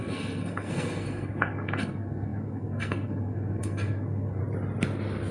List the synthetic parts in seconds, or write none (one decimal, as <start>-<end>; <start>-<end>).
0.0-4.4